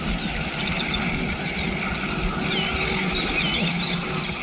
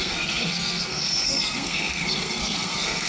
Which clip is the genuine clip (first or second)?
first